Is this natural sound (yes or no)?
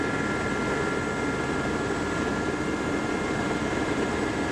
yes